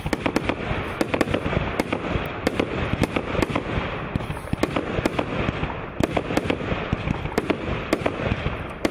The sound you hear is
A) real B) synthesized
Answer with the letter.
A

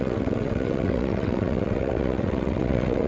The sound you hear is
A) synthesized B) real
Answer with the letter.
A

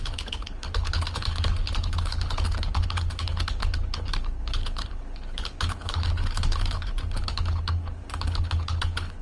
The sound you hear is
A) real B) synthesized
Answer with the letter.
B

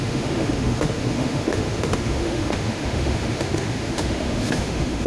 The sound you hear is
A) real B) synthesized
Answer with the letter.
B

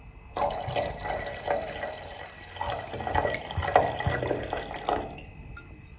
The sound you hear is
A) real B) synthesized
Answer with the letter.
A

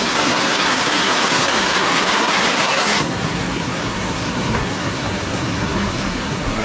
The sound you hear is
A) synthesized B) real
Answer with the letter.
A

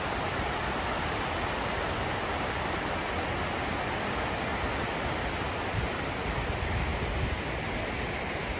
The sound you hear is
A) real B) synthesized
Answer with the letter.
A